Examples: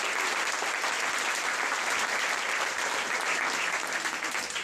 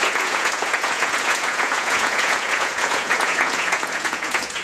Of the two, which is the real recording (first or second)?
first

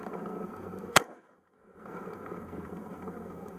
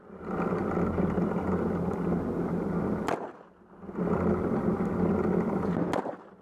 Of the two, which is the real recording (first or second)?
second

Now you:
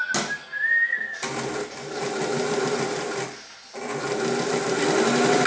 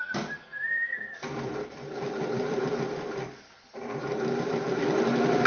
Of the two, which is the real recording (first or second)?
first